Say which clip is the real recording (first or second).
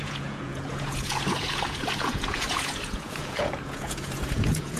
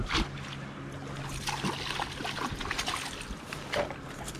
second